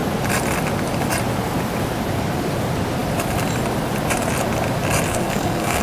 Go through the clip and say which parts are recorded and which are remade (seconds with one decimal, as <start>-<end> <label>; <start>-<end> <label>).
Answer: 0.0-5.1 recorded; 5.1-5.8 remade